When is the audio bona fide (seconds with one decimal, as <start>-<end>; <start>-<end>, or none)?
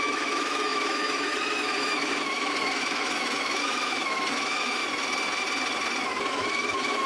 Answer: 4.8-6.3